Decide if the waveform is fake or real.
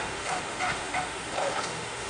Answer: fake